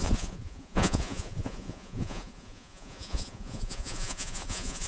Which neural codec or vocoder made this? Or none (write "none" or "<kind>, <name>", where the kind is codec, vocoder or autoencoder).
vocoder, Vocos